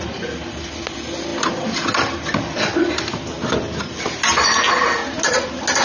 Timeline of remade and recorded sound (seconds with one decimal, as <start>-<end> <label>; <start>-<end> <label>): 0.0-5.8 recorded